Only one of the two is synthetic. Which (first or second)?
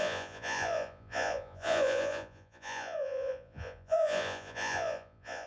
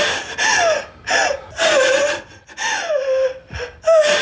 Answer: first